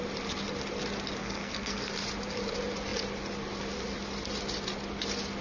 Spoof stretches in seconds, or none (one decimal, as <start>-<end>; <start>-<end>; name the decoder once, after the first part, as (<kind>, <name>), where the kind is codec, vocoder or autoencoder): 1.2-1.9 (codec, SNAC)